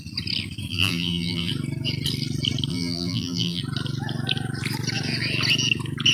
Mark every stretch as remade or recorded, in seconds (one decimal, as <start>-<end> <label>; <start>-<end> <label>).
0.0-0.7 recorded; 0.7-1.5 remade; 1.5-2.7 recorded; 2.7-3.6 remade; 3.6-6.1 recorded